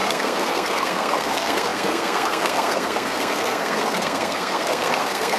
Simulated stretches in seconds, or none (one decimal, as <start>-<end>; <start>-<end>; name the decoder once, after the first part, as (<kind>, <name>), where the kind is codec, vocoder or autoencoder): 0.0-5.4 (codec, SNAC)